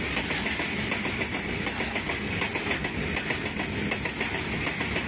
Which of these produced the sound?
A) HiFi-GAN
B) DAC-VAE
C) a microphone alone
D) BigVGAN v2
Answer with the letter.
C